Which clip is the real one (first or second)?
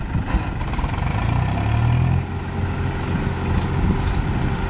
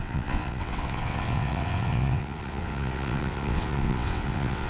first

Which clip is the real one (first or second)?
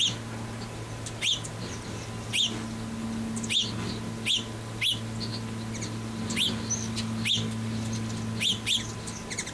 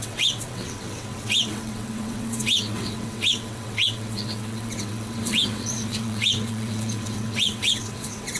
first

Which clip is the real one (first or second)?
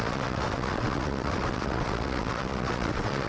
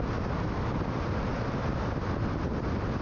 second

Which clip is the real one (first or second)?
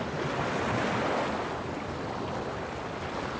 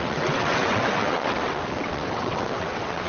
first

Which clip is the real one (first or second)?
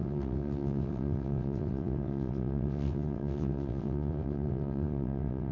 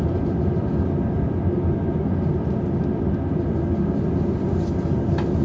second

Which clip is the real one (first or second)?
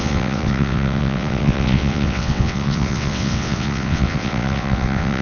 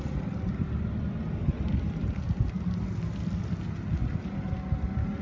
second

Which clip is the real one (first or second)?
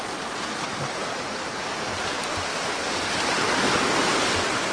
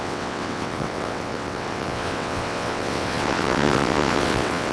first